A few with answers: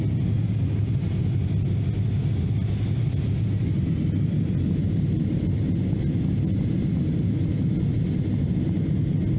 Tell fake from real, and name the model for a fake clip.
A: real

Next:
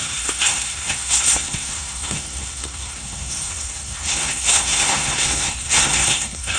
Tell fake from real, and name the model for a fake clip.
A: fake, codec, SNAC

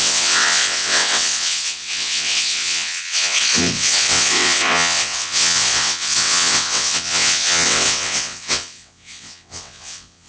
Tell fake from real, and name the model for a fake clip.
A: fake, vocoder, WaveNeXt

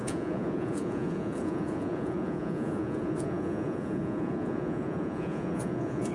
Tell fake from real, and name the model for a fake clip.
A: fake, vocoder, Vocos